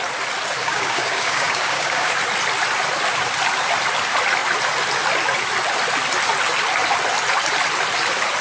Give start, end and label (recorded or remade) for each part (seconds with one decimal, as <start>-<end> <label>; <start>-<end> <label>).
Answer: 0.0-0.6 recorded; 0.6-2.1 remade; 2.1-8.4 recorded